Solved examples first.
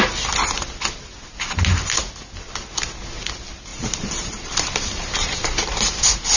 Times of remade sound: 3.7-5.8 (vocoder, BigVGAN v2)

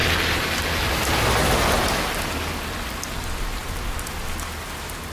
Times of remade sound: none

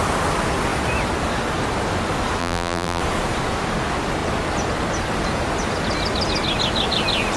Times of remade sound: 2.4-3.0 (vocoder, BigVGAN v2)

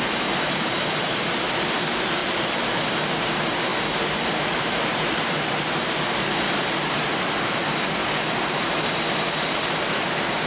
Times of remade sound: 0.0-2.2 (vocoder, BigVGAN v2); 3.2-10.5

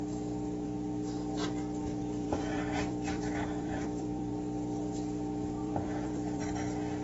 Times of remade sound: 2.0-4.3 (vocoder, BigVGAN v2); 5.6-6.4

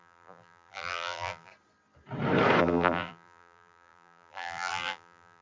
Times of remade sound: 0.0-1.5 (vocoder, BigVGAN v2); 2.6-5.4

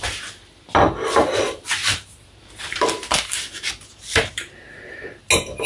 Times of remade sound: 1.8-5.2 (vocoder, BigVGAN v2)

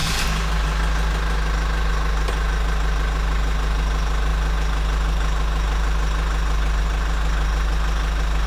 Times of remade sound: none